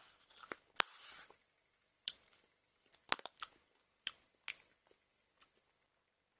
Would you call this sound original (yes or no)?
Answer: no